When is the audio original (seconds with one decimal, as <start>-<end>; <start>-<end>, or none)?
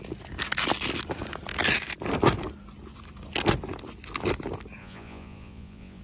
0.0-4.8